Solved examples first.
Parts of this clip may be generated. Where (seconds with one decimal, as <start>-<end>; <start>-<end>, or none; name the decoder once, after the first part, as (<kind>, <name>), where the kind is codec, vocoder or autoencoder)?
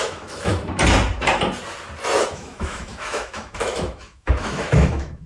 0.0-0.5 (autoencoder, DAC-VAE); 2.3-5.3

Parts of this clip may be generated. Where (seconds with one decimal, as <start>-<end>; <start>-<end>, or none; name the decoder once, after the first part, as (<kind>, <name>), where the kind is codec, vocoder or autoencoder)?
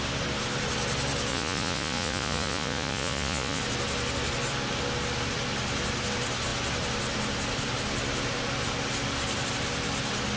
1.3-3.6 (vocoder, Vocos)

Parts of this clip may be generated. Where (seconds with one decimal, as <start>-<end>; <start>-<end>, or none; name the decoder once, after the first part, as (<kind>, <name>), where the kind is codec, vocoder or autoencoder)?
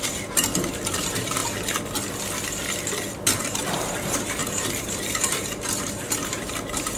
0.0-1.4 (vocoder, BigVGAN v2); 3.4-7.0